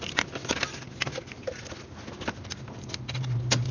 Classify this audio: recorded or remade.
recorded